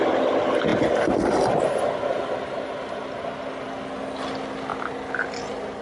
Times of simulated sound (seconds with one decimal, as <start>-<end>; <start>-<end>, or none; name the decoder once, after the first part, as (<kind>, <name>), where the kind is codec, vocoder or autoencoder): none